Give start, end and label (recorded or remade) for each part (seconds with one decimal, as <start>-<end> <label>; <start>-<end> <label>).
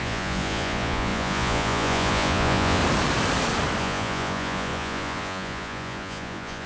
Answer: 0.0-2.8 remade; 2.8-3.8 recorded; 3.8-6.7 remade